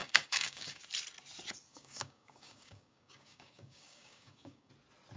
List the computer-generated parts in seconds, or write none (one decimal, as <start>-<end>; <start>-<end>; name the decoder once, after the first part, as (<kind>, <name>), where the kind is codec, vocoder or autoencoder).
0.0-0.8 (codec, DAC); 1.7-4.7